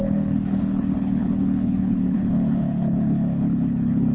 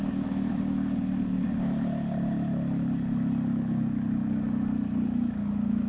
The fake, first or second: first